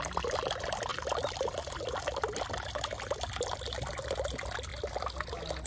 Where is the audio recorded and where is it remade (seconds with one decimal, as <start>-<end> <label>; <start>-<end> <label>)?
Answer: 0.0-0.9 recorded; 0.9-2.5 remade; 2.5-4.7 recorded; 4.7-5.3 remade; 5.3-5.7 recorded